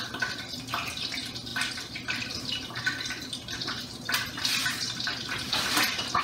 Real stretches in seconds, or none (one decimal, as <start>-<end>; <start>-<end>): 0.0-6.2